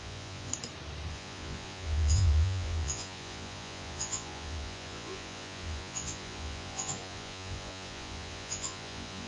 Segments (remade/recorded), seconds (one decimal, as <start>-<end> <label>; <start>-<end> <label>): 0.0-0.5 remade; 0.5-1.1 recorded; 1.1-9.3 remade